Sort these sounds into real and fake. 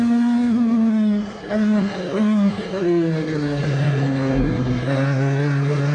fake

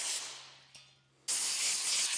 real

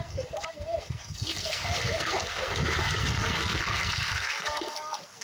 fake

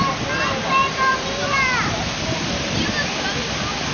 real